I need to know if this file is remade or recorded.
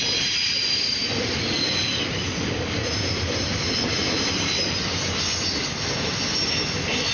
recorded